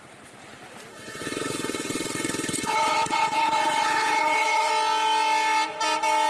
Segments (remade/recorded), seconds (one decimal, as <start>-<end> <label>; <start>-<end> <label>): 0.0-0.9 recorded; 0.9-4.7 remade; 4.7-6.3 recorded